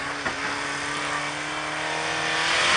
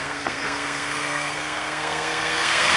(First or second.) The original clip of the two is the first